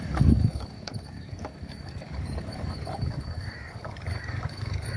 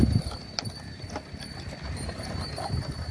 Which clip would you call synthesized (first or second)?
first